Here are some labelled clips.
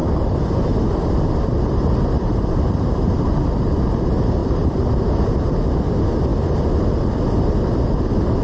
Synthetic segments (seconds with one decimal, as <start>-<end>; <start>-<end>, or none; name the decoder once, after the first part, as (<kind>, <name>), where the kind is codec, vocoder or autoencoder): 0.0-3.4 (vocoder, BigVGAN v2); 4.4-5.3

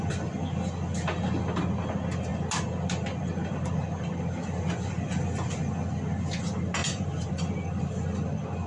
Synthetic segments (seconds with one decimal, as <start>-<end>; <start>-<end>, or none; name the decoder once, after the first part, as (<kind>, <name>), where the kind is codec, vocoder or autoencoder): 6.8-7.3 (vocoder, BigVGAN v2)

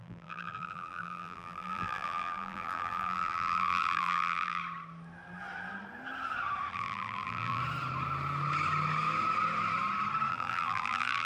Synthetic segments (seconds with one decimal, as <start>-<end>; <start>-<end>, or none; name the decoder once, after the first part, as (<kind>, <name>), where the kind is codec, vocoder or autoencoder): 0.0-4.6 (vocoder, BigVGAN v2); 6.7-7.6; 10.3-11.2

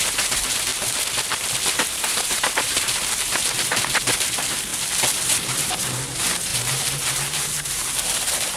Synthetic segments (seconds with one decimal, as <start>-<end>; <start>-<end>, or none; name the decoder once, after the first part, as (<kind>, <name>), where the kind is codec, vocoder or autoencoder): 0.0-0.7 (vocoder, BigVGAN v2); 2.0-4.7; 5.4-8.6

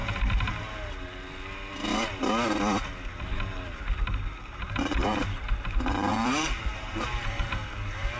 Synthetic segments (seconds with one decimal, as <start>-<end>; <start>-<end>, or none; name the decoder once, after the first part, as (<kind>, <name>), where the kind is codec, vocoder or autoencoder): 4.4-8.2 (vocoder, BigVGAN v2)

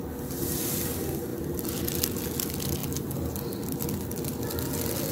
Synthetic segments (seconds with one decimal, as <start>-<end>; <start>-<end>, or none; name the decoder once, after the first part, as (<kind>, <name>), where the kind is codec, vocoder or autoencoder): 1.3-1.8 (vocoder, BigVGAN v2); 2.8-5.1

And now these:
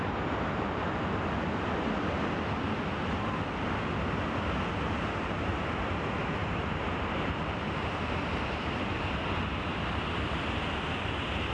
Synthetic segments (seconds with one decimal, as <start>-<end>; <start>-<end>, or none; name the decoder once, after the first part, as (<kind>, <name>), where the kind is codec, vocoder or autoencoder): 6.4-9.0 (vocoder, BigVGAN v2)